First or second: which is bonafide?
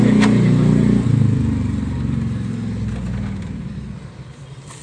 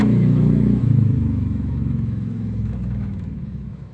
first